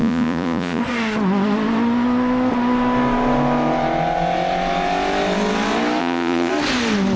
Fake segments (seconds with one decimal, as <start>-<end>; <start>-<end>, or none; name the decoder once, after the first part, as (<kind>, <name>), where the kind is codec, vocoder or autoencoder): 0.0-0.8 (vocoder, Vocos); 6.0-6.5